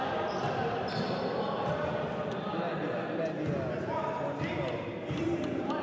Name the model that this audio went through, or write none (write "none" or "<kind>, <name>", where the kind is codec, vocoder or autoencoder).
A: none